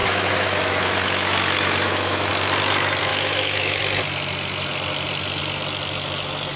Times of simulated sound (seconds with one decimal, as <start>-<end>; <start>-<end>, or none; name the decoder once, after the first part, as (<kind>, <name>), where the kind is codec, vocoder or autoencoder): 0.0-2.3 (autoencoder, DAC-VAE); 3.1-3.8